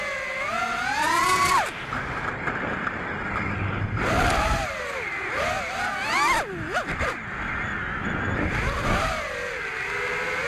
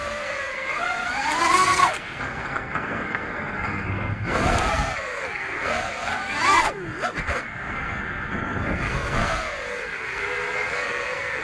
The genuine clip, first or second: first